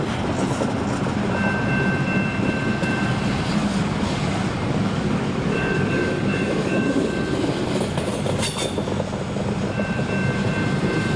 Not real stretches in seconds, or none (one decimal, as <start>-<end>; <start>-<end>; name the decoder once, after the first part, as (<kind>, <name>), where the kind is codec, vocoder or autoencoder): 3.6-7.1 (codec, DAC)